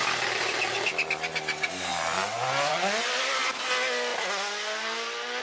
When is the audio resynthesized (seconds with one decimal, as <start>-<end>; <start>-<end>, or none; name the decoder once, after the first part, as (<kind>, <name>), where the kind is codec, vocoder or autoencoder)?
none